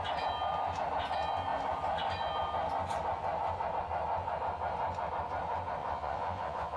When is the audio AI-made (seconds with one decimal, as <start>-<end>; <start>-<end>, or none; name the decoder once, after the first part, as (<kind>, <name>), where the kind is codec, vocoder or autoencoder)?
5.8-6.8 (vocoder, Vocos)

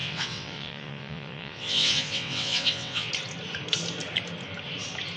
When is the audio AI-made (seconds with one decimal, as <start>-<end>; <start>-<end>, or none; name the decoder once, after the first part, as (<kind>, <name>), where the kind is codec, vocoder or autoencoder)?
0.0-3.1 (vocoder, WaveNeXt)

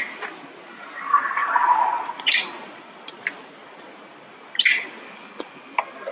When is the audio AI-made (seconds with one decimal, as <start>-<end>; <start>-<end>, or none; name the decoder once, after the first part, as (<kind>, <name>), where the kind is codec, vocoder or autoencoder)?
1.4-3.7 (vocoder, BigVGAN v2)

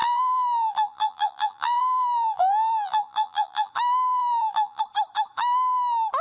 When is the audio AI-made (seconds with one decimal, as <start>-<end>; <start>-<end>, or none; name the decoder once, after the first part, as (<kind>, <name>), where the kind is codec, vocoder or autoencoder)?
0.0-3.7 (vocoder, BigVGAN v2); 4.2-4.8

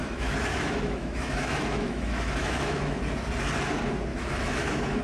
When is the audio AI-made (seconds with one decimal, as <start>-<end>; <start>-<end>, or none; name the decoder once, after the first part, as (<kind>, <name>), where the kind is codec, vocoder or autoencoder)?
0.0-3.0 (autoencoder, DAC-VAE); 4.1-5.0

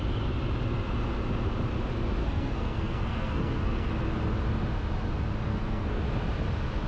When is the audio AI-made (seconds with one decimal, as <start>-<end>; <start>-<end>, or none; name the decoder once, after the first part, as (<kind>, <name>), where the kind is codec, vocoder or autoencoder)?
2.2-3.9 (codec, SNAC); 5.5-6.0

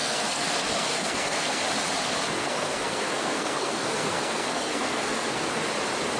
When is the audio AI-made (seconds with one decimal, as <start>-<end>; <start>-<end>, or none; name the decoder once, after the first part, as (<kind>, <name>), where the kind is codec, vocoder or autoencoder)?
0.0-1.6 (codec, SNAC); 2.4-5.5